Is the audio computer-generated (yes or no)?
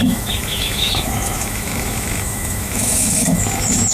yes